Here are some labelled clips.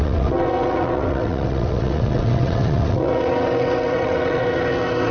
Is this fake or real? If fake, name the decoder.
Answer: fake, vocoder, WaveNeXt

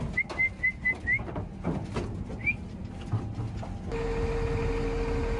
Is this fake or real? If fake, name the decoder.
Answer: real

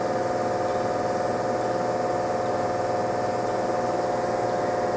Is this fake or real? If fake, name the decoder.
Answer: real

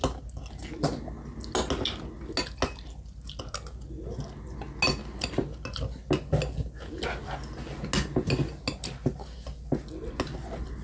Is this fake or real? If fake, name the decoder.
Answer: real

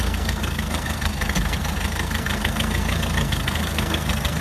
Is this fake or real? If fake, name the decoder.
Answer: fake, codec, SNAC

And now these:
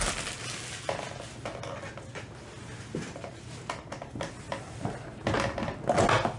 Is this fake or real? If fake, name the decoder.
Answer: real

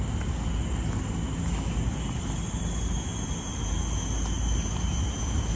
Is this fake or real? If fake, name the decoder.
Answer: real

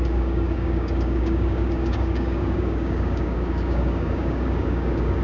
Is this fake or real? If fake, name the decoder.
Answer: fake, codec, DAC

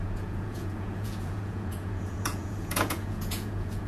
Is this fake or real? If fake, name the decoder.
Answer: fake, vocoder, Vocos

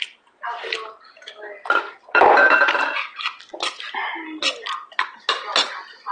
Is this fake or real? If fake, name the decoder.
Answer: real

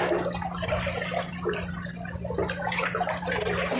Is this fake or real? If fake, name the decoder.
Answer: real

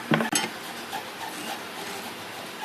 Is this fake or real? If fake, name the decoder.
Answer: real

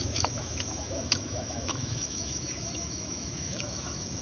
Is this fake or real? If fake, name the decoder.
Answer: fake, autoencoder, DAC-VAE